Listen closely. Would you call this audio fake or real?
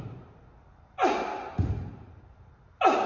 real